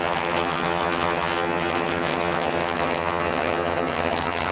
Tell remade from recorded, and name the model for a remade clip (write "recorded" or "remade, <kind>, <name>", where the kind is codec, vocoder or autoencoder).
remade, vocoder, HiFi-GAN